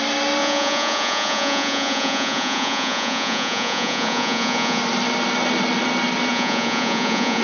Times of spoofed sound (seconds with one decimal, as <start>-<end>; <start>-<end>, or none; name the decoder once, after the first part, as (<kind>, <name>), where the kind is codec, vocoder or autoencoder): 0.4-4.8 (vocoder, Vocos); 6.3-7.4